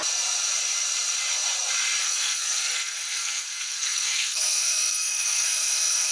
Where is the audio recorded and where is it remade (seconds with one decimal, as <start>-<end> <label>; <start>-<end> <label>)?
0.0-2.0 recorded; 2.0-6.1 remade

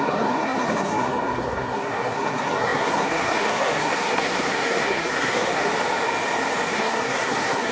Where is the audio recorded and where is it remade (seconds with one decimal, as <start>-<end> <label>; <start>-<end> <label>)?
0.0-5.7 remade; 5.7-6.7 recorded; 6.7-7.7 remade

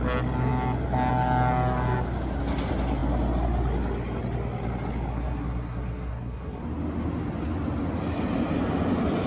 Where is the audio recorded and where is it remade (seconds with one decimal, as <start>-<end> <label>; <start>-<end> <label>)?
0.0-5.1 recorded; 5.1-6.6 remade; 6.6-9.3 recorded